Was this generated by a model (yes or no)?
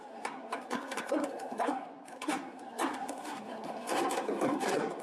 yes